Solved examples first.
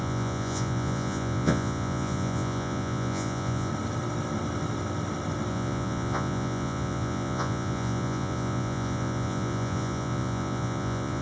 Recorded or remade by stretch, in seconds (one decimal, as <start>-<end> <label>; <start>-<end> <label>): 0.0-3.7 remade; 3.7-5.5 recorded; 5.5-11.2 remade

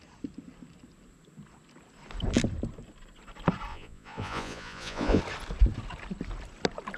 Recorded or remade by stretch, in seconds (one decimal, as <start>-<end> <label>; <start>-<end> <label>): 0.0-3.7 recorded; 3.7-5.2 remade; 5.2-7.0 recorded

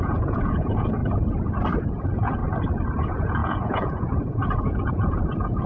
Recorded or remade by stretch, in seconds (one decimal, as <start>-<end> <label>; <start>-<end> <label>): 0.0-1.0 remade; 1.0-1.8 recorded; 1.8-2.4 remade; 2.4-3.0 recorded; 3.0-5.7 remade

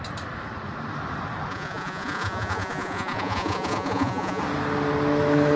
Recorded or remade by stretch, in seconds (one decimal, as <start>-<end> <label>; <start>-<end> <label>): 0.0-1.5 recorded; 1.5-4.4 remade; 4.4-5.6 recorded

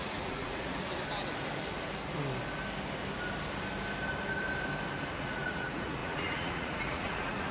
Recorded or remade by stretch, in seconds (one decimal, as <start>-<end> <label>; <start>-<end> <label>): 0.0-0.9 remade; 0.9-5.2 recorded; 5.2-7.5 remade

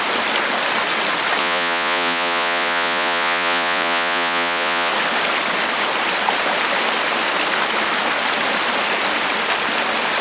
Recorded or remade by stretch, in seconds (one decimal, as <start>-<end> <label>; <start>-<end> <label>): 0.0-1.4 recorded; 1.4-4.9 remade; 4.9-10.2 recorded

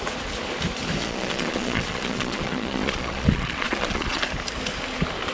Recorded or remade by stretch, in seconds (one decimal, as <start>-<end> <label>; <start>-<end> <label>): 0.0-1.0 recorded; 1.0-4.2 remade; 4.2-5.3 recorded